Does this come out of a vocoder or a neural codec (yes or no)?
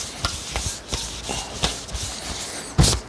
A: no